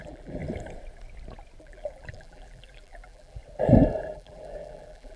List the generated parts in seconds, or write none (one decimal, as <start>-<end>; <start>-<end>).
0.0-0.4; 1.6-3.4; 4.0-5.2